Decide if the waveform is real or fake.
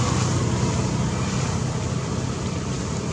real